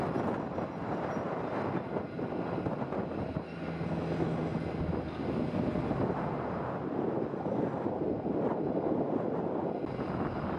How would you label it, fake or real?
real